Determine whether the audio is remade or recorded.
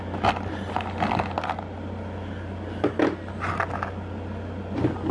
recorded